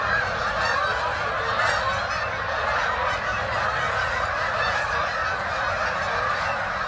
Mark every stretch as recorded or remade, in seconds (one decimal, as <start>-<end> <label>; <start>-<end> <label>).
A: 0.0-0.7 remade; 0.7-2.8 recorded; 2.8-3.3 remade; 3.3-3.9 recorded; 3.9-5.2 remade; 5.2-6.2 recorded; 6.2-6.9 remade